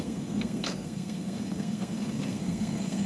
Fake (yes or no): yes